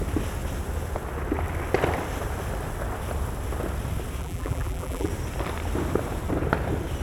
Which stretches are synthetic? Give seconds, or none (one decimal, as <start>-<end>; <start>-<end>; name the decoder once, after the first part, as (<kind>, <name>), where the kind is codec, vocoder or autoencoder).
4.2-5.1 (vocoder, BigVGAN v2)